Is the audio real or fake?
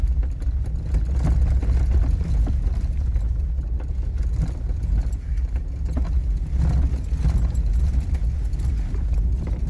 real